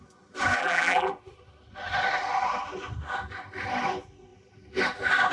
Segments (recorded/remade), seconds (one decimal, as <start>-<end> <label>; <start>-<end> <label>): 0.0-0.6 recorded; 0.6-1.1 remade; 1.1-5.3 recorded